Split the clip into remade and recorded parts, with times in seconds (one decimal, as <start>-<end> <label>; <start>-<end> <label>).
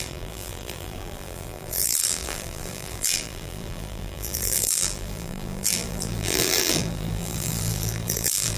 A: 0.0-8.6 remade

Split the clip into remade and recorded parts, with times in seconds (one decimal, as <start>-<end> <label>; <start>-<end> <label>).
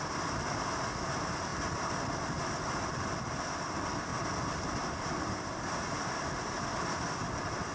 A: 0.0-7.7 recorded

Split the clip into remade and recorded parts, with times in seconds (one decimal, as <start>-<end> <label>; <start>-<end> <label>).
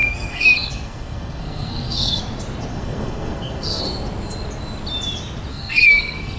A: 0.0-2.2 remade; 2.2-2.7 recorded; 2.7-3.8 remade; 3.8-5.5 recorded; 5.5-6.4 remade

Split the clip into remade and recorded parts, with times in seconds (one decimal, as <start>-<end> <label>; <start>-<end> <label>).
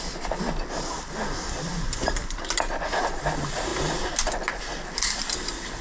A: 0.0-5.8 recorded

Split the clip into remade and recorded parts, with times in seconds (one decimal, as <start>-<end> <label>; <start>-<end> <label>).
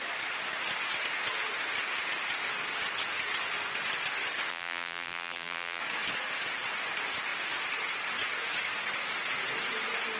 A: 0.0-4.5 recorded; 4.5-5.8 remade; 5.8-10.2 recorded